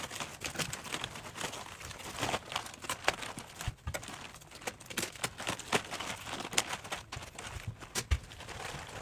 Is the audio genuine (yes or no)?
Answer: yes